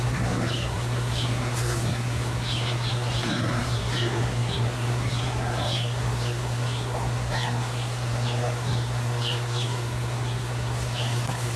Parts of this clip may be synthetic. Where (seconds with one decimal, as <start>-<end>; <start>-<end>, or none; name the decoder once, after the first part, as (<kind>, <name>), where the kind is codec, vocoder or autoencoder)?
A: 0.0-11.6 (codec, SNAC)